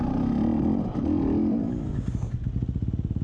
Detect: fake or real real